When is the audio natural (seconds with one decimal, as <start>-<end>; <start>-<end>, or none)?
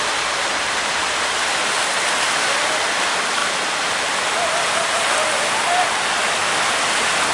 0.0-7.3